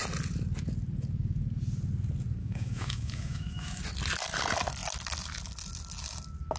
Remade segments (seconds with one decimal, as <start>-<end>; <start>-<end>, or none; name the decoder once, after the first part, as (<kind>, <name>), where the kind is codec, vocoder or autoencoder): 2.4-3.8 (autoencoder, DAC-VAE)